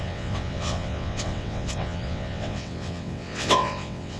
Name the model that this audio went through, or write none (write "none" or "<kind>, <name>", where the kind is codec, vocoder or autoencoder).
vocoder, WaveNeXt